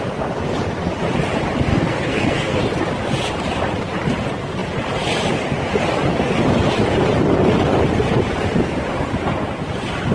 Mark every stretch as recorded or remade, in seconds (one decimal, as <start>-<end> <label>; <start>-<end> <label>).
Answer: 0.0-1.7 recorded; 1.7-2.6 remade; 2.6-10.1 recorded